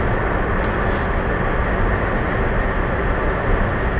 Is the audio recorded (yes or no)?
yes